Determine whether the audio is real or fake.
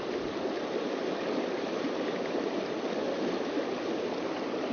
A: real